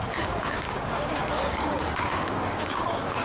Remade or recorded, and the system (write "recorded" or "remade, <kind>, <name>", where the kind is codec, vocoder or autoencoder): remade, codec, DAC